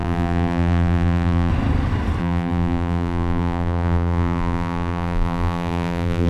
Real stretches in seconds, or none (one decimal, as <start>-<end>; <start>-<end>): 1.5-2.2